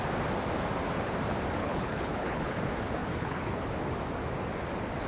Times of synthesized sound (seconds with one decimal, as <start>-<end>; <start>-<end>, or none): 1.6-2.6; 3.0-3.7